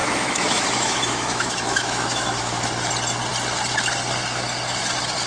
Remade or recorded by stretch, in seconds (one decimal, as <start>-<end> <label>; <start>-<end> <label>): 0.0-2.6 remade; 2.6-5.3 recorded